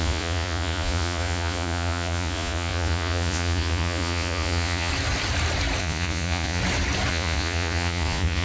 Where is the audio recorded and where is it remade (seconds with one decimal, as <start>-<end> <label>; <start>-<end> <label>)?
0.0-4.9 remade; 4.9-5.8 recorded; 5.8-6.6 remade; 6.6-7.1 recorded; 7.1-8.4 remade